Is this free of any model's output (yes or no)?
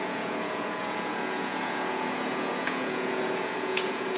no